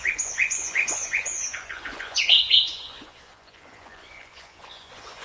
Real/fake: fake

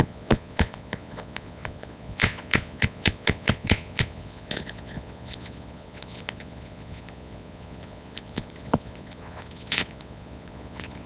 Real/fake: fake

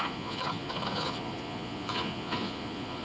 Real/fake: fake